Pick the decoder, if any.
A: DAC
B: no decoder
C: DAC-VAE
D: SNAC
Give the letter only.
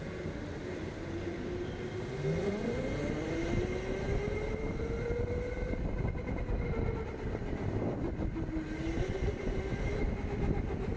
B